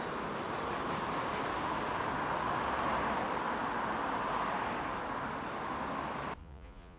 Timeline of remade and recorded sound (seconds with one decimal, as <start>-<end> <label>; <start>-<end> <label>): 0.0-6.4 recorded; 6.4-7.0 remade

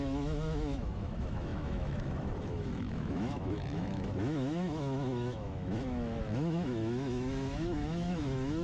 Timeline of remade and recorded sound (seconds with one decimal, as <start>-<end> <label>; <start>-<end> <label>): 0.0-8.6 remade

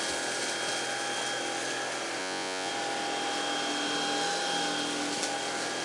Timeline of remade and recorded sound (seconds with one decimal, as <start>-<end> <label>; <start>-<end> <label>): 0.0-2.2 recorded; 2.2-2.7 remade; 2.7-5.8 recorded